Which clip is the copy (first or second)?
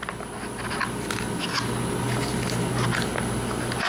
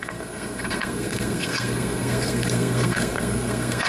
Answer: second